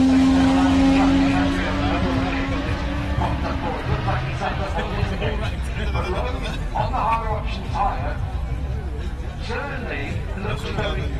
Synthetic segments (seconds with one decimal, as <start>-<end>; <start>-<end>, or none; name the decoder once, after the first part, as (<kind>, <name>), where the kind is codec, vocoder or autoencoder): 10.0-11.2 (vocoder, BigVGAN v2)